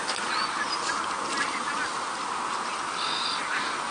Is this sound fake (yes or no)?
no